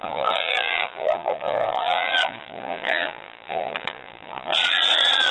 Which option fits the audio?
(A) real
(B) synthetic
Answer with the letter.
B